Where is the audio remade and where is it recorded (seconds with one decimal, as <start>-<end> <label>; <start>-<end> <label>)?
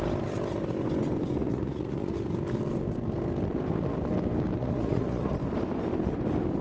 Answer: 0.0-1.4 recorded; 1.4-2.1 remade; 2.1-4.6 recorded; 4.6-5.3 remade; 5.3-6.6 recorded